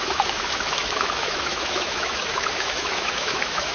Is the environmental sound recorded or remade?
remade